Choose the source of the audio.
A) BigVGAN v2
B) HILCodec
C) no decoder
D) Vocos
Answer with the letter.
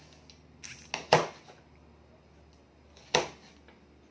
C